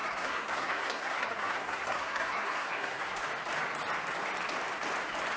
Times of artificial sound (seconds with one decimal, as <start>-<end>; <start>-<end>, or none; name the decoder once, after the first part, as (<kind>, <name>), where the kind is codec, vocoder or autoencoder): 0.0-3.2 (codec, SNAC)

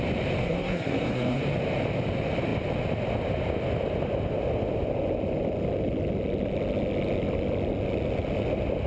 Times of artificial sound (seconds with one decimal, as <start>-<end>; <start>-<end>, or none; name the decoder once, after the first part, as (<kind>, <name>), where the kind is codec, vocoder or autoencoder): 0.4-1.4 (codec, SNAC)

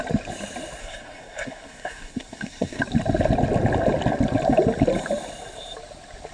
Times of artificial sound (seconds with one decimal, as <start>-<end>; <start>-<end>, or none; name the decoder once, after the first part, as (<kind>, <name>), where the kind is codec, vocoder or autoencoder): 0.8-2.8 (codec, SNAC)

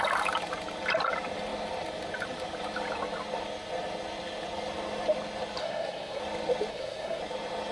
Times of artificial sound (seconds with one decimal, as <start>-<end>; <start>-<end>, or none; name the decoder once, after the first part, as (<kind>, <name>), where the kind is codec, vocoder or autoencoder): 5.6-6.2 (codec, SNAC); 6.7-7.2